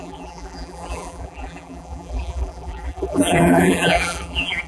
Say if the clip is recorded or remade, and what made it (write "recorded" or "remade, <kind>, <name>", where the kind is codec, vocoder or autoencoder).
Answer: remade, vocoder, BigVGAN v2